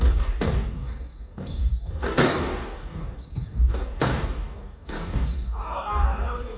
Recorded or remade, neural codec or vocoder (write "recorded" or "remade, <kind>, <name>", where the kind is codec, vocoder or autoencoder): remade, codec, DAC